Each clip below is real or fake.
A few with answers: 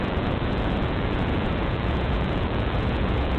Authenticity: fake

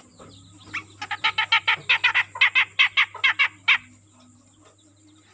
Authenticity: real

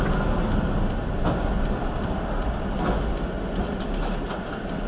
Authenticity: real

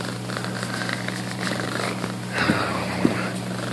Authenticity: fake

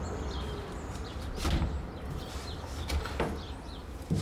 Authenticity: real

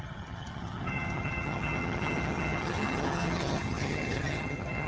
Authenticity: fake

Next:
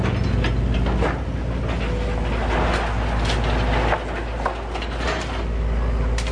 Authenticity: real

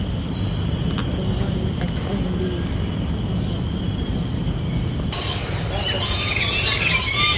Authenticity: real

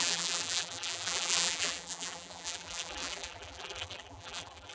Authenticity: fake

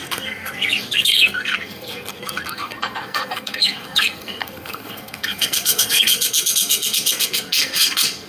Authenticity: fake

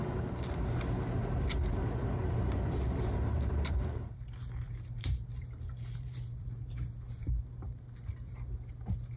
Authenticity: fake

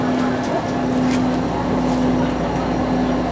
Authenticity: real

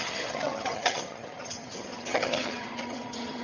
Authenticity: fake